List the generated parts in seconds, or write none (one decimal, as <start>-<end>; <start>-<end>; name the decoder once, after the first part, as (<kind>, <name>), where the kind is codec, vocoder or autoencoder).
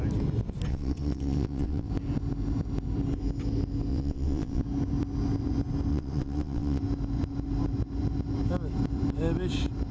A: 0.7-1.9 (vocoder, WaveNeXt); 3.9-4.6; 5.9-6.8